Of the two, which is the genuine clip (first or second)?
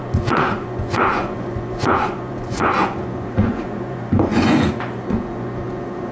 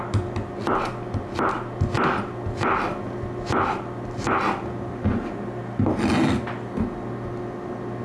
second